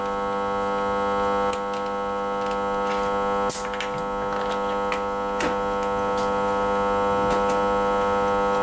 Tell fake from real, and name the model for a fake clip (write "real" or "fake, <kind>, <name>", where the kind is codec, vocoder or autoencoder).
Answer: real